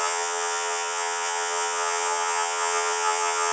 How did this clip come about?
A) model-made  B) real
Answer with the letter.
A